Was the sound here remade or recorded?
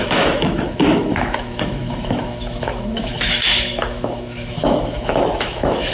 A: remade